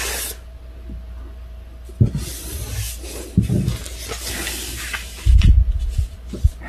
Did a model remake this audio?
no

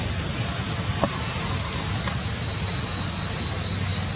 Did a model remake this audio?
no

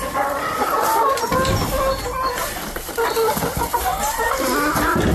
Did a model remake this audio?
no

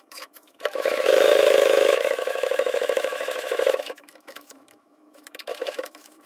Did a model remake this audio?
yes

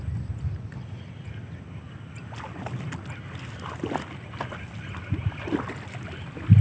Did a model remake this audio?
no